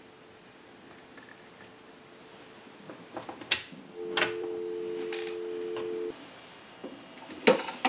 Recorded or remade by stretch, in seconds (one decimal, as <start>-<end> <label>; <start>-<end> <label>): 0.0-7.9 recorded